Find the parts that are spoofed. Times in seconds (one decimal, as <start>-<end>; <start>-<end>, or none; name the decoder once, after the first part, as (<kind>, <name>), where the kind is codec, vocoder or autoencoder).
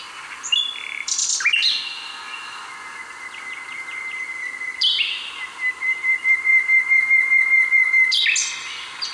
none